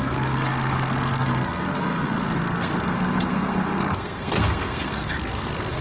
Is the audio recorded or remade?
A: remade